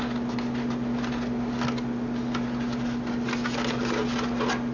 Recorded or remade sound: recorded